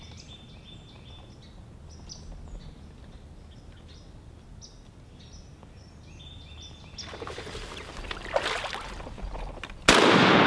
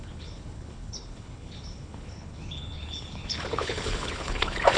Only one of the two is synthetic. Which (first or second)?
second